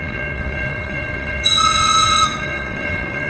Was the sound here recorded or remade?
remade